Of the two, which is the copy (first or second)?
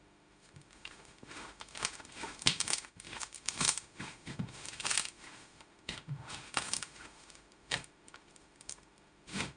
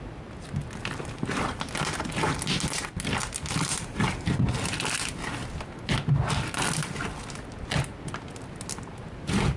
first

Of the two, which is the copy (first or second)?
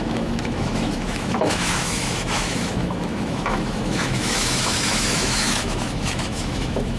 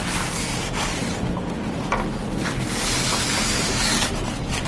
first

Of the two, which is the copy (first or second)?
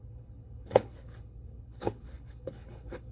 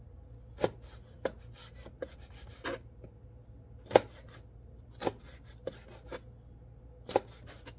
first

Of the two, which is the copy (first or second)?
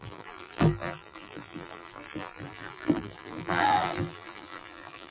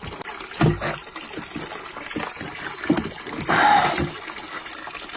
first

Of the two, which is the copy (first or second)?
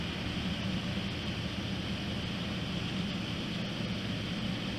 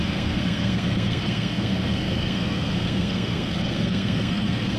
second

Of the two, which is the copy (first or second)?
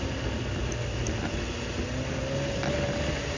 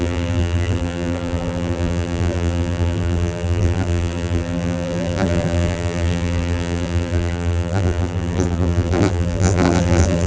second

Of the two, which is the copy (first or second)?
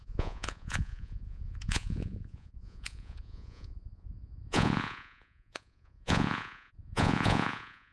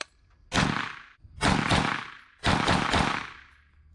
first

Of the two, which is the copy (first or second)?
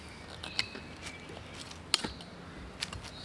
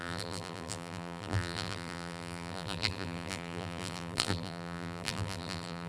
second